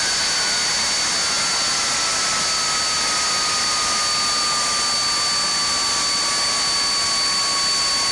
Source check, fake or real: real